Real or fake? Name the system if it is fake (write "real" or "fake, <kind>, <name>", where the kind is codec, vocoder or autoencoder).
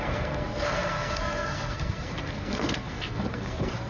fake, codec, SNAC